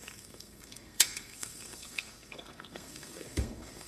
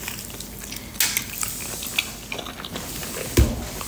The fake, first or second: first